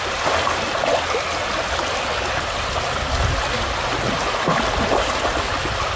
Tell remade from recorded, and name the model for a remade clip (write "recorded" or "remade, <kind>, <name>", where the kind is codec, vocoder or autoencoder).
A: recorded